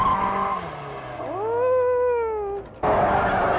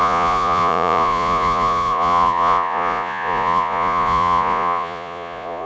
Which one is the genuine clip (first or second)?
first